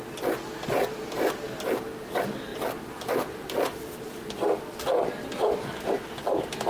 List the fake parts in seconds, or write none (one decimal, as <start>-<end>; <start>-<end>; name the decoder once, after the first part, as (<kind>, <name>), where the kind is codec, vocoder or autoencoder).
2.5-5.6 (vocoder, BigVGAN v2)